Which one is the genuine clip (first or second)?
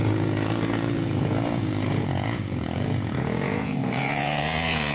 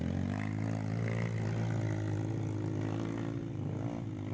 second